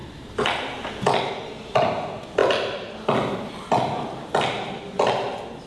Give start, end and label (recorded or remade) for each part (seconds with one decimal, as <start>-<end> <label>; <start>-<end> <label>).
0.0-5.7 recorded

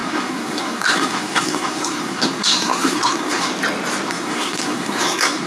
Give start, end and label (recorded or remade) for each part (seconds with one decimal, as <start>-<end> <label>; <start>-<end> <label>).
0.0-3.5 remade; 3.5-4.1 recorded; 4.1-5.5 remade

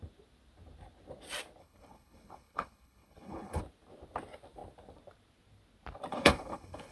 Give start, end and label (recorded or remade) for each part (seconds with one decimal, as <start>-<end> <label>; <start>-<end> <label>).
0.0-1.6 recorded; 1.6-3.6 remade; 3.6-6.1 recorded; 6.1-6.9 remade

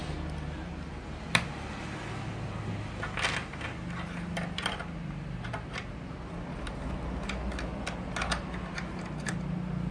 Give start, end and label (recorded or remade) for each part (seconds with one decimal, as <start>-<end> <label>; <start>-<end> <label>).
0.0-9.9 recorded

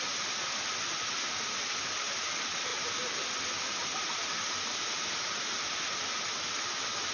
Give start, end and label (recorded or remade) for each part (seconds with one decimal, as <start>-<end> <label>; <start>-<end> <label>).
0.0-7.1 recorded